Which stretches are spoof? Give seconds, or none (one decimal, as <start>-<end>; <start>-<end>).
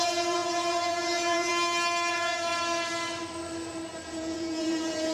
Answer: 0.0-1.5; 2.1-2.5; 4.1-5.1